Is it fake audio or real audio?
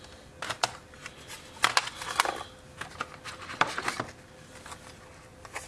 real